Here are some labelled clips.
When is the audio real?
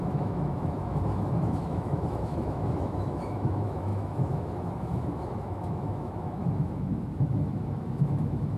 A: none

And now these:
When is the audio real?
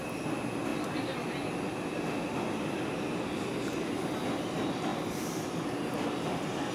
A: 0.0-6.7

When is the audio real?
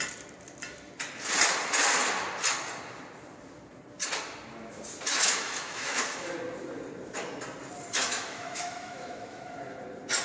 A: 0.0-5.1; 6.0-8.0; 9.4-10.2